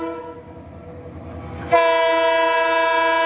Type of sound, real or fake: real